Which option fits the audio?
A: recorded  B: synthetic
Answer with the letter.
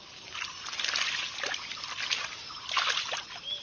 A